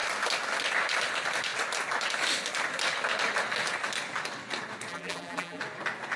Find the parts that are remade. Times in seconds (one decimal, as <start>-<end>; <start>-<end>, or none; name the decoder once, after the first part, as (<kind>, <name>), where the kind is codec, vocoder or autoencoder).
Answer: 4.9-5.6 (vocoder, BigVGAN v2)